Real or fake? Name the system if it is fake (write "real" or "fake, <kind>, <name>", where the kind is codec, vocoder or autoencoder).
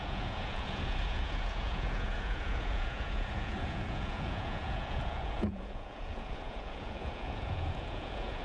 fake, vocoder, Vocos